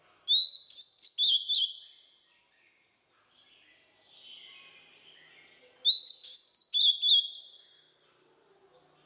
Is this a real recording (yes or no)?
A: yes